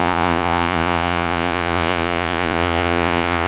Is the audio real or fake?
fake